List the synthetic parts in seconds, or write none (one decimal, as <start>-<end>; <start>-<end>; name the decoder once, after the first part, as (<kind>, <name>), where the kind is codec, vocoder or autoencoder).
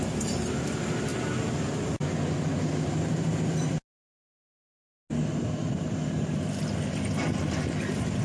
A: none